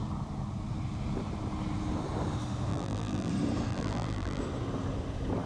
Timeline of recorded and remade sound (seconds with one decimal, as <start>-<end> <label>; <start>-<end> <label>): 0.0-2.7 recorded; 2.7-3.3 remade; 3.3-3.7 recorded; 3.7-4.4 remade; 4.4-5.5 recorded

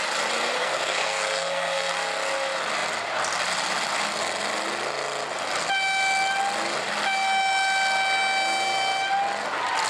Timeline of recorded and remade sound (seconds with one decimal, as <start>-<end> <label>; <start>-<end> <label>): 0.0-0.6 recorded; 0.6-1.9 remade; 1.9-9.9 recorded